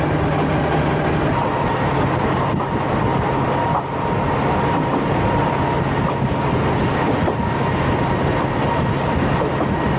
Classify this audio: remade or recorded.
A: recorded